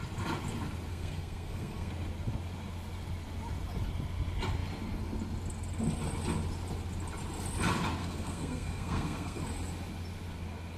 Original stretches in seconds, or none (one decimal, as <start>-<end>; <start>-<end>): 0.0-0.9; 1.9-8.0; 9.4-10.8